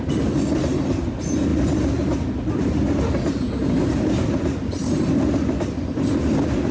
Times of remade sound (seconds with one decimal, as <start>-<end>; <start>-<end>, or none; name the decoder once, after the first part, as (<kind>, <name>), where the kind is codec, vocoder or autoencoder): none